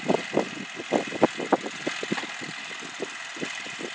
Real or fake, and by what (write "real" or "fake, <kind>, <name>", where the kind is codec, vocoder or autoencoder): real